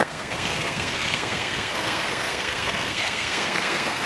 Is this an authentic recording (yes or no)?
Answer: no